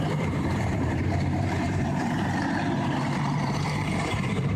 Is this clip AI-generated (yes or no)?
yes